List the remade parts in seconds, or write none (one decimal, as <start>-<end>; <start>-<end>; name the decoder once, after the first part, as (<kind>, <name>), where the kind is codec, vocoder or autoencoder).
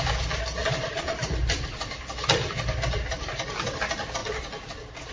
0.6-3.2 (vocoder, BigVGAN v2); 4.2-5.1